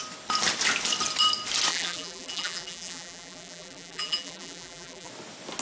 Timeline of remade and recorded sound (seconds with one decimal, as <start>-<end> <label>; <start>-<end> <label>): 0.0-1.7 recorded; 1.7-5.1 remade; 5.1-5.6 recorded